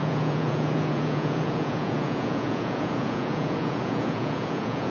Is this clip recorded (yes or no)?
no